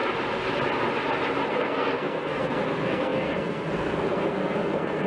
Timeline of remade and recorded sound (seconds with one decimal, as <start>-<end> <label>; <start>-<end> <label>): 0.0-1.5 recorded; 1.5-5.1 remade